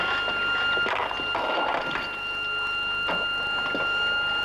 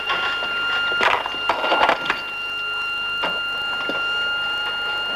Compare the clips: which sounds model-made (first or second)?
first